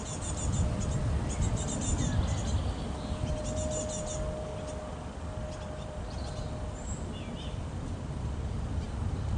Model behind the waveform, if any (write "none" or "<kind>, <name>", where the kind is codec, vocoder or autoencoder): none